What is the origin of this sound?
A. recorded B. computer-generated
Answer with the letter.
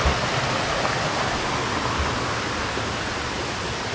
A